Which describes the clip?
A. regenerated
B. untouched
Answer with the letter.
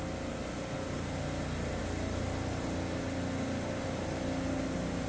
B